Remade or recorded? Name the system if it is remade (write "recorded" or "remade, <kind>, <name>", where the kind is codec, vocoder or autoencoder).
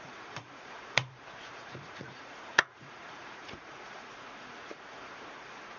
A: remade, vocoder, Vocos